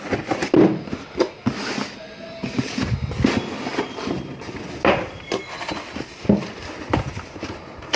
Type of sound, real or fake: real